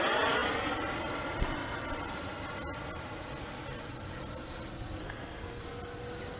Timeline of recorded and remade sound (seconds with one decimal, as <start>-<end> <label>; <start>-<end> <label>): 0.0-5.0 recorded; 5.0-5.6 remade; 5.6-6.4 recorded